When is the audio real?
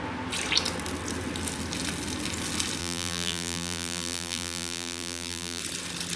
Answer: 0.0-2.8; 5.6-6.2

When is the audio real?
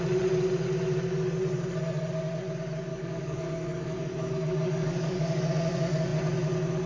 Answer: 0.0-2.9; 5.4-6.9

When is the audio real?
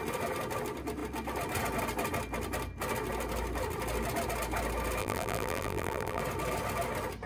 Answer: 0.0-5.0; 6.2-7.3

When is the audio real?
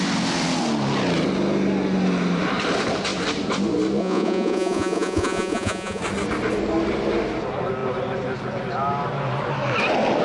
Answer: 0.0-4.0; 6.0-10.2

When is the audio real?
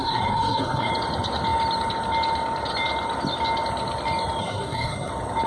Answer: 0.9-4.4; 5.1-5.5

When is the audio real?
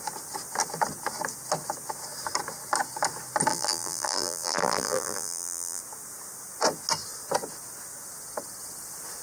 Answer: 0.0-3.5; 5.8-9.2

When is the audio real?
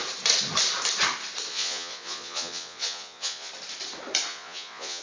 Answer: 0.0-1.5; 3.5-4.3